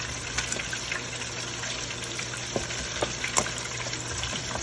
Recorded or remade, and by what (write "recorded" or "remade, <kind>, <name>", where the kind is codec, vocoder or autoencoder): recorded